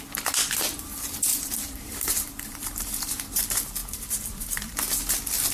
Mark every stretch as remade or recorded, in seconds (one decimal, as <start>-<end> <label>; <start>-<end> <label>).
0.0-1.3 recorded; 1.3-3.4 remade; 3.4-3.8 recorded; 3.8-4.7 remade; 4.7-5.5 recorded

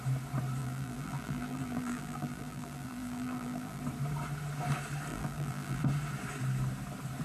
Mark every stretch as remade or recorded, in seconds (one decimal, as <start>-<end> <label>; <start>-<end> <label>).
0.0-0.6 recorded; 0.6-3.8 remade; 3.8-5.1 recorded; 5.1-5.8 remade; 5.8-7.2 recorded

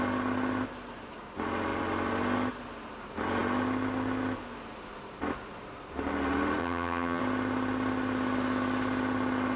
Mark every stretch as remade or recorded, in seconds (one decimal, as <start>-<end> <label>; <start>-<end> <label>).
0.0-6.6 recorded; 6.6-7.2 remade; 7.2-9.6 recorded

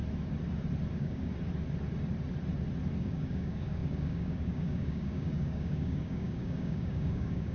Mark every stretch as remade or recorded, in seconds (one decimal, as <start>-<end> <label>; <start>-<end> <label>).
0.0-0.9 recorded; 0.9-1.3 remade; 1.3-3.0 recorded; 3.0-7.5 remade

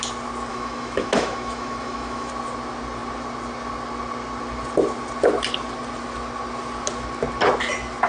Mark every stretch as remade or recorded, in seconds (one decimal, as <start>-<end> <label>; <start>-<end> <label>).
0.0-0.5 recorded; 0.5-2.3 remade; 2.3-8.1 recorded

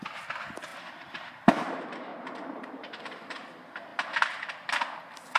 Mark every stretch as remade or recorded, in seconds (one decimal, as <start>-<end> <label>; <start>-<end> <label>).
0.0-2.1 recorded; 2.1-2.7 remade; 2.7-5.4 recorded